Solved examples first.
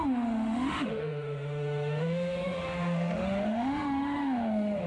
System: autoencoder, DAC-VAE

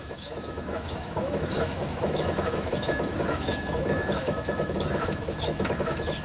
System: autoencoder, DAC-VAE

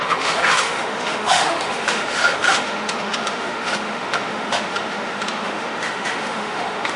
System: autoencoder, DAC-VAE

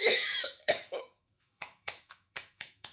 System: autoencoder, DAC-VAE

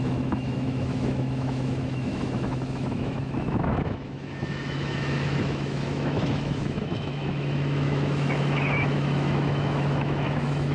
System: autoencoder, DAC-VAE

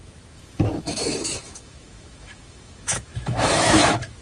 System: autoencoder, DAC-VAE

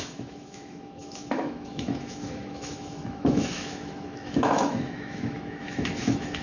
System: autoencoder, DAC-VAE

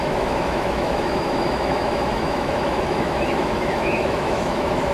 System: autoencoder, DAC-VAE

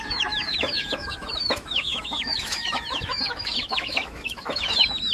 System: autoencoder, DAC-VAE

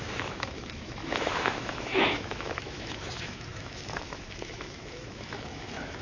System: autoencoder, DAC-VAE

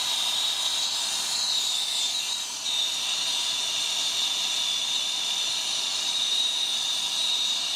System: none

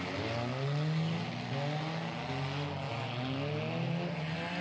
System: none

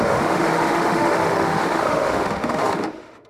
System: autoencoder, DAC-VAE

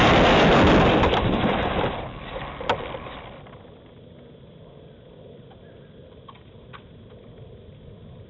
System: none